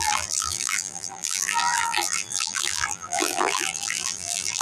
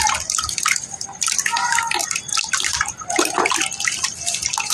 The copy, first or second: first